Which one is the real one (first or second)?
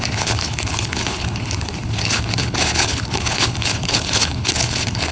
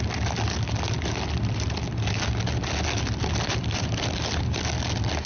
second